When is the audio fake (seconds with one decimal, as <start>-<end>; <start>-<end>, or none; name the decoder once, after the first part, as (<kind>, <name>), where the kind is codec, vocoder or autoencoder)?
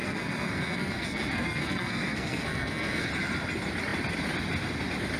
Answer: 0.0-3.1 (codec, SNAC)